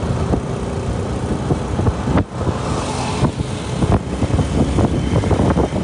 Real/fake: real